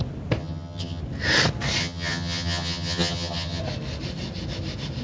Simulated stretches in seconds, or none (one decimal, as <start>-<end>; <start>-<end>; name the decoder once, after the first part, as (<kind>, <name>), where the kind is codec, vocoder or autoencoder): 0.4-1.0 (vocoder, HiFi-GAN); 1.8-3.6